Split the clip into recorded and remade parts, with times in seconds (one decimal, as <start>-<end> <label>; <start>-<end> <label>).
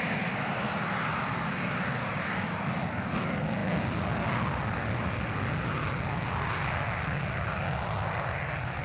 0.0-8.8 recorded